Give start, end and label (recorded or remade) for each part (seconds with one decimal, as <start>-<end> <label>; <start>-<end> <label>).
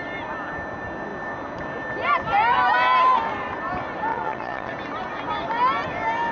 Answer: 0.0-4.1 recorded; 4.1-4.7 remade; 4.7-6.3 recorded